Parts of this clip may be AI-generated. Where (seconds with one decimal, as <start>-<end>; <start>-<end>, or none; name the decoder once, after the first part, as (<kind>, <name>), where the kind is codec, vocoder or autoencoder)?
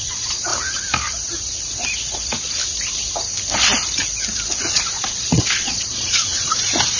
0.0-0.5 (vocoder, Vocos); 4.7-7.0